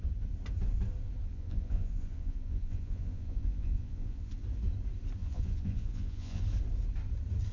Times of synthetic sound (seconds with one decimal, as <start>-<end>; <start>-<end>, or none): 1.3-4.3; 5.2-6.4